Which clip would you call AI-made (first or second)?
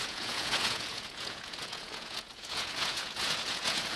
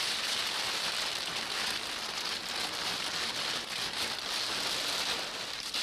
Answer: first